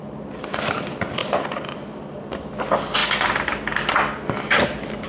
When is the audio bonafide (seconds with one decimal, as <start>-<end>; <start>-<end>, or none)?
3.0-5.1